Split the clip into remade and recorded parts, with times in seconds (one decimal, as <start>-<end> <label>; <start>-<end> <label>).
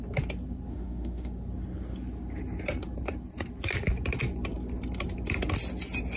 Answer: 0.0-0.7 recorded; 0.7-1.3 remade; 1.3-6.2 recorded